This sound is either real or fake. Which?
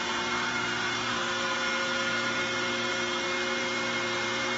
fake